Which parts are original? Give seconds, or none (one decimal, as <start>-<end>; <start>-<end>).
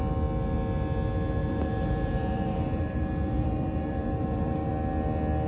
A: 0.0-1.4; 4.7-5.5